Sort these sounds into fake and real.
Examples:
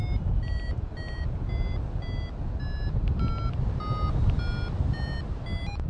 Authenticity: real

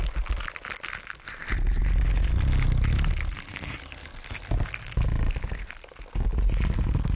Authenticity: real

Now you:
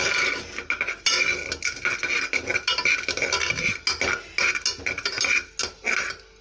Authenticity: real